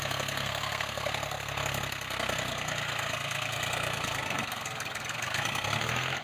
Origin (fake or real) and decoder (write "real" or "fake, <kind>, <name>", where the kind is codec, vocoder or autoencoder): fake, codec, SNAC